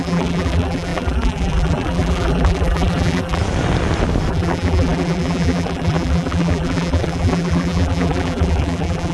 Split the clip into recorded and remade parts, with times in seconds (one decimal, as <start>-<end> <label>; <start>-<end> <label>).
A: 0.0-3.4 remade; 3.4-4.3 recorded; 4.3-9.1 remade